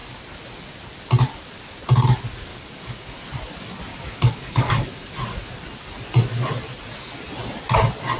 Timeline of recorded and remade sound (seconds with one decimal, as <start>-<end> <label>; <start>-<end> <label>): 0.0-2.5 recorded; 2.5-3.2 remade; 3.2-3.9 recorded; 3.9-5.1 remade; 5.1-8.2 recorded